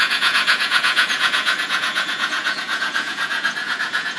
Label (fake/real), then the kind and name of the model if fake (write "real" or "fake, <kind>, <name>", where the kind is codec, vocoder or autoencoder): fake, vocoder, Vocos